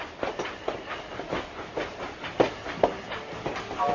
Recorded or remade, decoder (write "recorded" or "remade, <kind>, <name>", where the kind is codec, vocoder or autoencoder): recorded